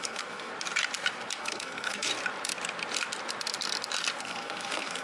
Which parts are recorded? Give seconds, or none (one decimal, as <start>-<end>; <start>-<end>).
0.5-1.4; 2.1-4.2